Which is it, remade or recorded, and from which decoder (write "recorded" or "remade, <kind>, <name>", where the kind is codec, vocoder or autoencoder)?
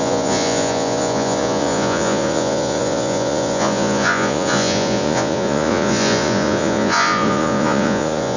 remade, vocoder, Vocos